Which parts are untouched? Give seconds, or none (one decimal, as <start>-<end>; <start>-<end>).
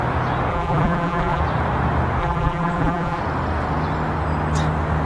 0.0-0.5; 1.4-2.2; 3.2-5.1